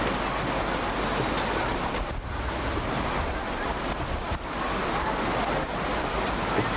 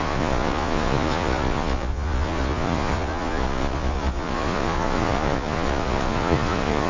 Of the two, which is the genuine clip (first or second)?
first